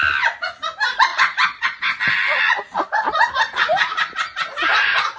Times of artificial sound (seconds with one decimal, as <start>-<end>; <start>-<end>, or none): 1.1-2.0